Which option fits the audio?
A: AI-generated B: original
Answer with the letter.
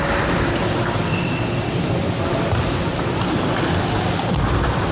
B